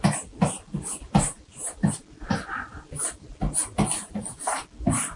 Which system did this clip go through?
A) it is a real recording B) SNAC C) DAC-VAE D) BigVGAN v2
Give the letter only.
A